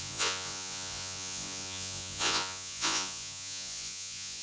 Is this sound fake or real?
fake